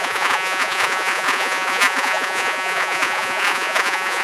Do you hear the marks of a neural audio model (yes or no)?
yes